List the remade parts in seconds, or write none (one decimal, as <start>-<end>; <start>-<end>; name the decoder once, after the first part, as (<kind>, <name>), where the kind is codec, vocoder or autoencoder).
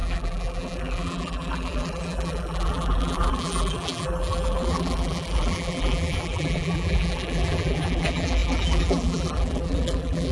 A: 0.0-10.3 (vocoder, BigVGAN v2)